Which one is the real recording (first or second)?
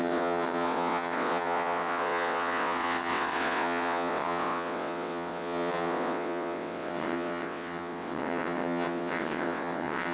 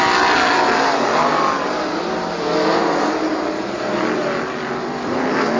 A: second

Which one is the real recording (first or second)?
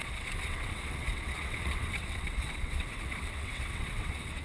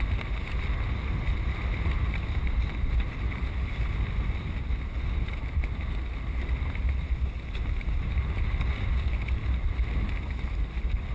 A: second